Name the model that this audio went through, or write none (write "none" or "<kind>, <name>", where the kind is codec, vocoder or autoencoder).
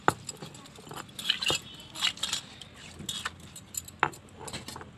none